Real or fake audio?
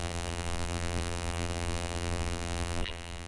fake